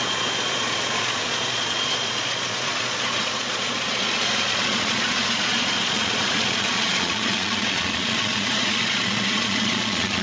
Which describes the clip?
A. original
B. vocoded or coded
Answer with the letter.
B